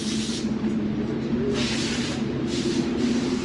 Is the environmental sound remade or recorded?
remade